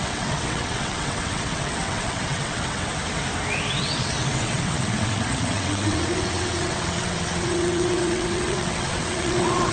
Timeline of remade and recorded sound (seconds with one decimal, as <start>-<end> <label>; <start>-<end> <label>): 0.0-2.9 remade; 2.9-3.8 recorded; 3.8-9.7 remade